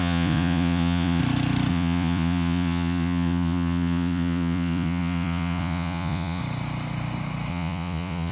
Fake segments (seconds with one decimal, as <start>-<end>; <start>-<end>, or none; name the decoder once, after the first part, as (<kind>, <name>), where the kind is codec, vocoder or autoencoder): 0.0-1.2 (vocoder, Vocos); 1.7-6.4; 7.5-8.3